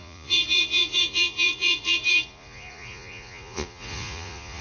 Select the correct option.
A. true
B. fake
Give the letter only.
B